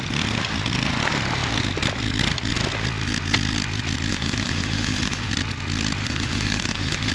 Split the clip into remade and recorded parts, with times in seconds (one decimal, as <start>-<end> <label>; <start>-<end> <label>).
0.0-4.1 recorded; 4.1-5.3 remade; 5.3-6.0 recorded; 6.0-7.1 remade